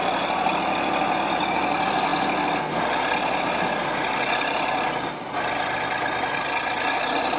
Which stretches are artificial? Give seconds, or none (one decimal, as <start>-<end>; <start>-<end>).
none